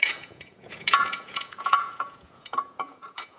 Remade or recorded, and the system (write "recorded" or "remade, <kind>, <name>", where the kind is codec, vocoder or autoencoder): remade, vocoder, Vocos